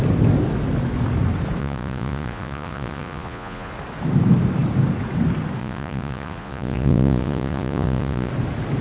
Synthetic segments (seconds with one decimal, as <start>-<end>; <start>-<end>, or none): 1.6-3.7; 5.6-8.3